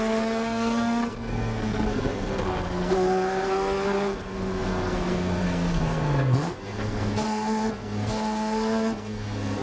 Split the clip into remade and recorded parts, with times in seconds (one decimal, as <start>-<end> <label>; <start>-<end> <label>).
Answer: 0.0-9.6 remade